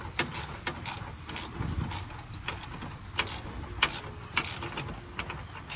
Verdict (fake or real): real